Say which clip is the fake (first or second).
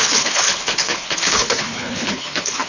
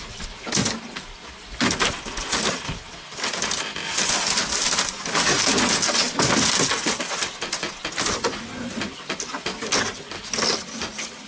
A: first